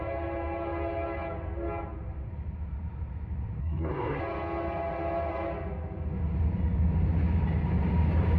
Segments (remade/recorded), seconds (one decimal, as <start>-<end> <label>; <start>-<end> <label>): 0.0-3.6 recorded; 3.6-4.2 remade; 4.2-8.4 recorded